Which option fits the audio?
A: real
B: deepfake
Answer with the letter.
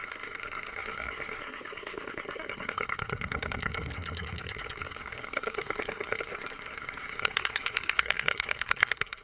B